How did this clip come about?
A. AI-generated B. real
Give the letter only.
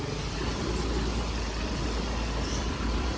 A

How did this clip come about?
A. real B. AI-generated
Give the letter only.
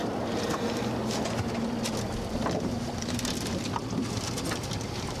A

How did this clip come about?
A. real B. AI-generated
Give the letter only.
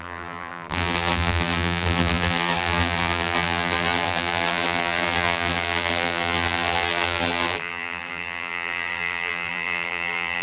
B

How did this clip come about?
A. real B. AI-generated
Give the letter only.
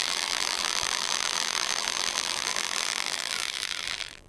B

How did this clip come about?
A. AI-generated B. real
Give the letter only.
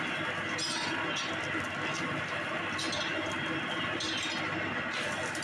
B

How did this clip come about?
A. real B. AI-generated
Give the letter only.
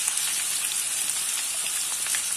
B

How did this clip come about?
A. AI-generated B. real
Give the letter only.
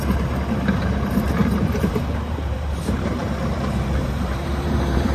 A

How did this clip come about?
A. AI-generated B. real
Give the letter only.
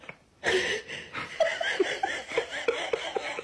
A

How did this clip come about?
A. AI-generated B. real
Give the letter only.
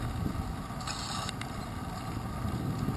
B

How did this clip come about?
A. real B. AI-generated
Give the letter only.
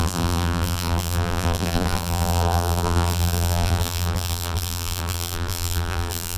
B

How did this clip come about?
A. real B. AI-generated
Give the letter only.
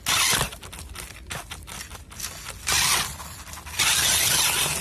A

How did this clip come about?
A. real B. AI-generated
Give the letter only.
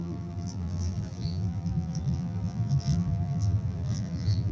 B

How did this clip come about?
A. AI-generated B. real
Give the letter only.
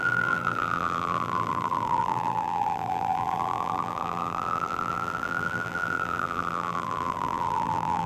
A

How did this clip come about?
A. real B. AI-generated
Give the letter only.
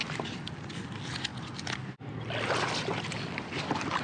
A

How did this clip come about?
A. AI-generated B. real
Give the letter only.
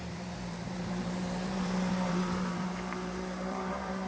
A